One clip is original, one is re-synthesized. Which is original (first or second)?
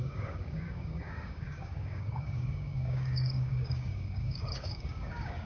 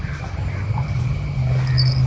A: second